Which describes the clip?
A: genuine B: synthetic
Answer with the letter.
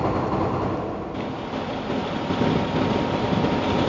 A